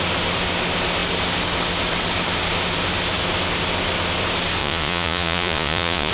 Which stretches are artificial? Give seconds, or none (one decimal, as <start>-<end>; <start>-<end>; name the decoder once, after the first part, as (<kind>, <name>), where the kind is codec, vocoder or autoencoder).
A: 4.6-6.1 (vocoder, Vocos)